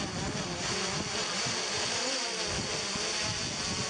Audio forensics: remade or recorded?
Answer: recorded